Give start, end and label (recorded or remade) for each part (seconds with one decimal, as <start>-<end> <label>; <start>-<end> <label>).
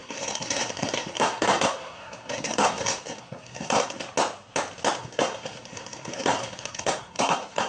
0.0-4.0 remade; 4.0-5.0 recorded; 5.0-7.7 remade